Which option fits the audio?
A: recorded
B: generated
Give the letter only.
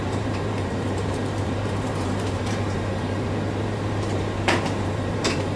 B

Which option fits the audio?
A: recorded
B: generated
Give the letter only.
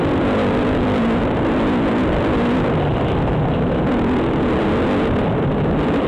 B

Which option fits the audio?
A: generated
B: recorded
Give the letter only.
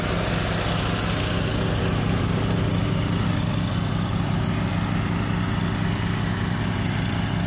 B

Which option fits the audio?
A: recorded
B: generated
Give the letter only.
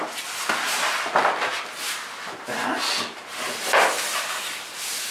A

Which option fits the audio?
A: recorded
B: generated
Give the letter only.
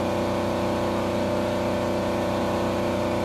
A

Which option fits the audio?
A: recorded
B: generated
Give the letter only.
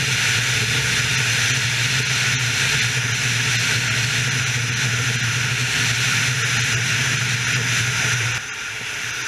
A